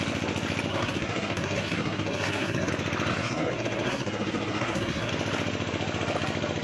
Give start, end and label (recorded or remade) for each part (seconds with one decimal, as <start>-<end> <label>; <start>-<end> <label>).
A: 0.0-0.7 recorded; 0.7-2.7 remade; 2.7-3.1 recorded; 3.1-5.1 remade; 5.1-6.6 recorded